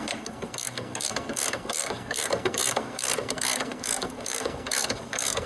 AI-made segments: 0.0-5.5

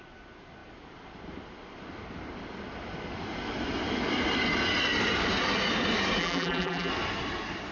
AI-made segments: 6.2-6.9

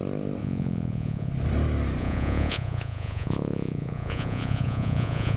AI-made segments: 0.4-1.3; 2.0-5.4

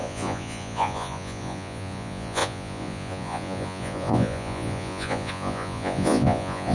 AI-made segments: 0.0-6.7

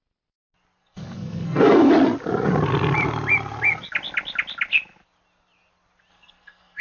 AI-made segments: 0.8-1.9; 6.1-6.8

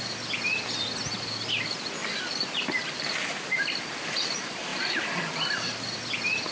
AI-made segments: 2.0-3.2; 4.7-6.1

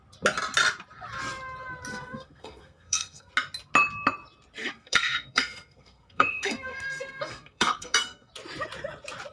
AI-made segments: 1.9-3.3; 4.6-8.3

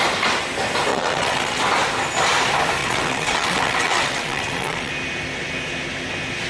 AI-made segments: 0.9-1.6; 2.8-4.9